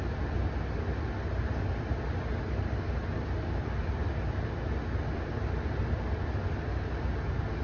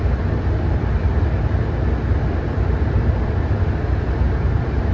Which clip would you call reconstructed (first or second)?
second